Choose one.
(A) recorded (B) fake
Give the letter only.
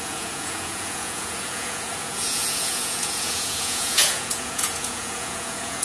B